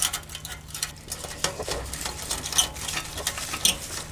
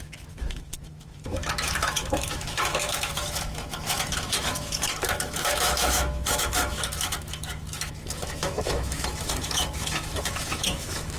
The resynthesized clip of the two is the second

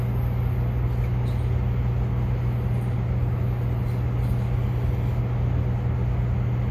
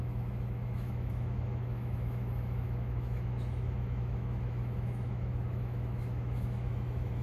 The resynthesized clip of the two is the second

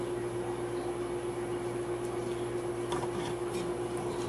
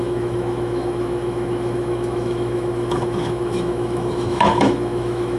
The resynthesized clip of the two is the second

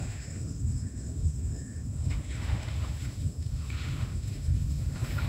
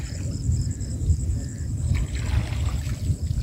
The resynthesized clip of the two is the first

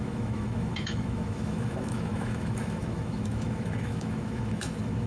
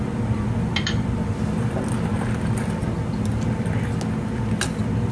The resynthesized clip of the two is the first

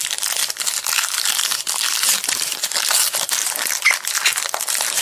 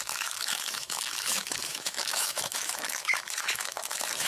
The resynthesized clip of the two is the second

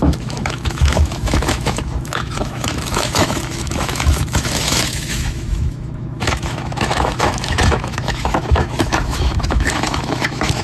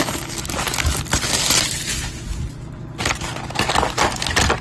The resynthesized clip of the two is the first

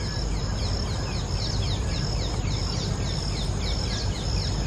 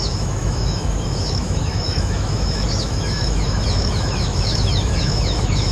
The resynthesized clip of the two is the second